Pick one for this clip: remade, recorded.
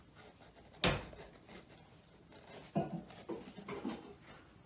recorded